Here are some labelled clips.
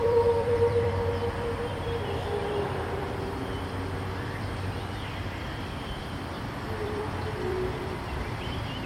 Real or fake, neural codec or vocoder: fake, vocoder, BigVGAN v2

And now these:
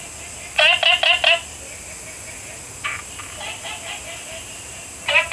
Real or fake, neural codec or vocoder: real